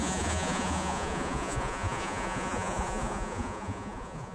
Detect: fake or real fake